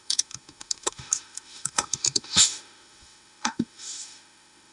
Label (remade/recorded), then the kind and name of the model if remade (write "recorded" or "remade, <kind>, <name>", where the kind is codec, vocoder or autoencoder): remade, autoencoder, DAC-VAE